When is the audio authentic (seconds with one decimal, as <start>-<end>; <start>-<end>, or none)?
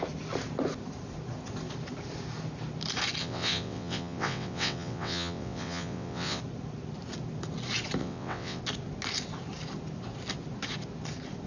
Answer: 0.0-3.2; 6.4-8.0; 8.6-11.5